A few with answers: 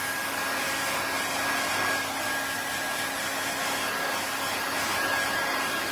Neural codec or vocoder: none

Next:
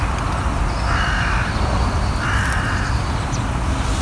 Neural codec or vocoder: none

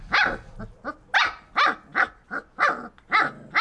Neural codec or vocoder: none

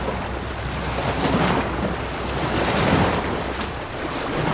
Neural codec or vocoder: none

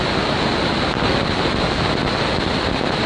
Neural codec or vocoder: none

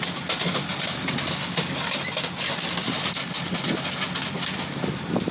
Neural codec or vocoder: none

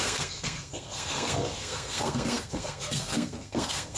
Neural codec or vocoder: codec, SNAC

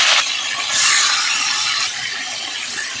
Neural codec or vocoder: none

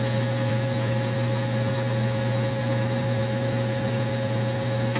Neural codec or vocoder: none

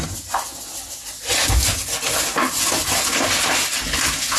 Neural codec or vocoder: none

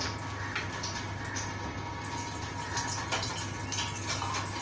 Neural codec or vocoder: none